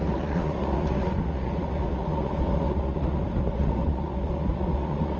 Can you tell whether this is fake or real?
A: fake